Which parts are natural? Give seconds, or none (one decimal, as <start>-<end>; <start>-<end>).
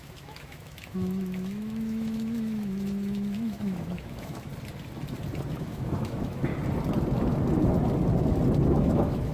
4.5-5.5; 6.5-8.7